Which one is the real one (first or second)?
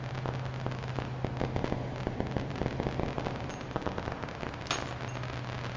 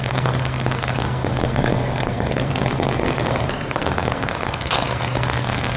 first